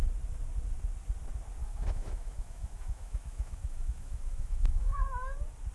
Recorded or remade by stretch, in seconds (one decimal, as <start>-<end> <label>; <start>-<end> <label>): 0.0-1.6 recorded; 1.6-5.0 remade; 5.0-5.7 recorded

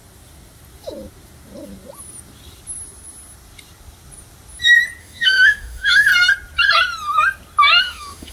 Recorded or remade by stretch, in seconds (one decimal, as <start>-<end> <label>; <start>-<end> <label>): 0.0-5.0 recorded; 5.0-6.1 remade; 6.1-7.8 recorded; 7.8-8.3 remade